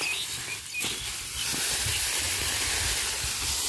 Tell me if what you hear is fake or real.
real